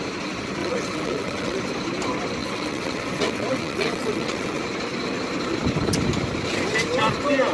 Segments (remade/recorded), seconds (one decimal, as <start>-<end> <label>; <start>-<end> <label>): 0.0-0.6 recorded; 0.6-1.6 remade; 1.6-2.4 recorded; 2.4-4.6 remade; 4.6-7.5 recorded